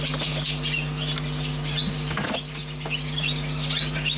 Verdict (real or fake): real